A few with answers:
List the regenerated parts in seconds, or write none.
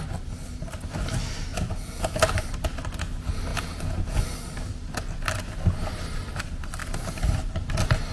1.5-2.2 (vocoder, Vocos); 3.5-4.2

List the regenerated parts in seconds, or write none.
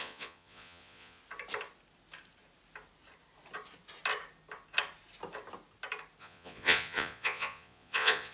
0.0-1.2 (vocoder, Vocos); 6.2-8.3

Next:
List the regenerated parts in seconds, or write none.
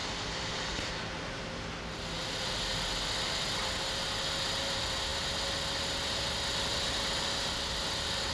none